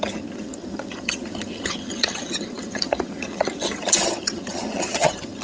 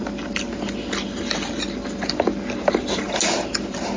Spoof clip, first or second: first